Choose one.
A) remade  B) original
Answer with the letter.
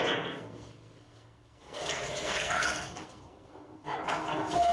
A